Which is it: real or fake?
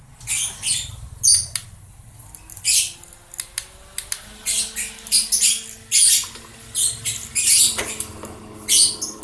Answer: real